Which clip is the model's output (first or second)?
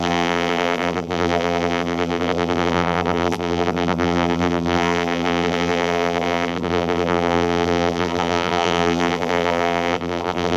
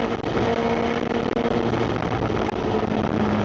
first